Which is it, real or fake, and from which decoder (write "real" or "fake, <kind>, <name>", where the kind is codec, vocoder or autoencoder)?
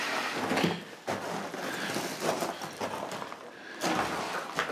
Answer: real